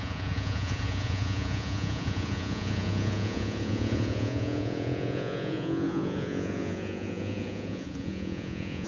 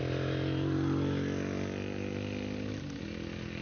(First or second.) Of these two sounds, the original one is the second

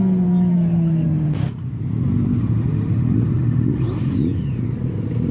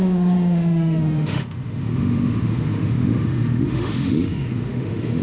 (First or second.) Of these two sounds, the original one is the first